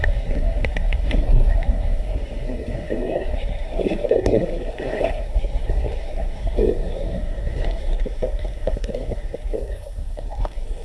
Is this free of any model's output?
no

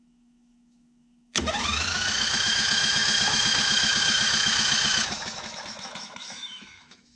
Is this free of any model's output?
no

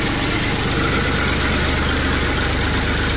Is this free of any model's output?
yes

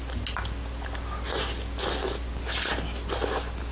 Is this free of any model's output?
yes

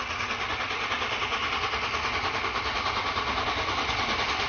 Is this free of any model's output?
yes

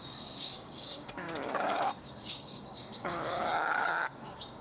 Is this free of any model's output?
no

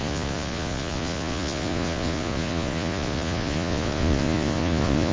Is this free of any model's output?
no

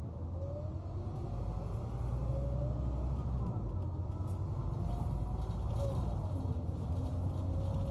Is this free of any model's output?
yes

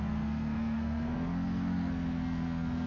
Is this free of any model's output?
no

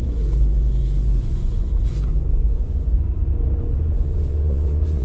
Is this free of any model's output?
no